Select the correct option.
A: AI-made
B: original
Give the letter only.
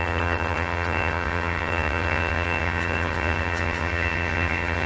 A